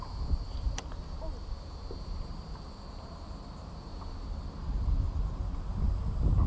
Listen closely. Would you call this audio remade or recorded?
recorded